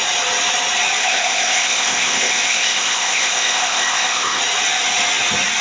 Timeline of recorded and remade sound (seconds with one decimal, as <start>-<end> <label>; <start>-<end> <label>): 0.0-1.0 recorded; 1.0-4.4 remade; 4.4-5.6 recorded